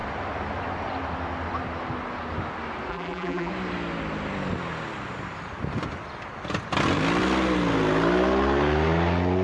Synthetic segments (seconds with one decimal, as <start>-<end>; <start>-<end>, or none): 2.9-3.5